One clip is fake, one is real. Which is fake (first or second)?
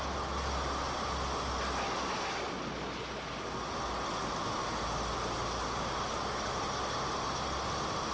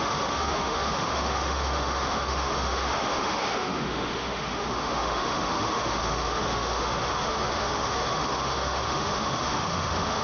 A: second